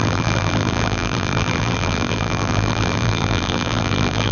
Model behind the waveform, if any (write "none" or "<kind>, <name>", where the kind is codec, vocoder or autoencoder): vocoder, BigVGAN v2